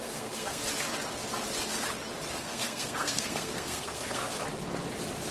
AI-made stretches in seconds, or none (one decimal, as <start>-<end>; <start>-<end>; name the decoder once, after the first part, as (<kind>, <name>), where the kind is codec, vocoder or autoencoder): 0.0-0.6 (codec, SNAC); 2.3-4.2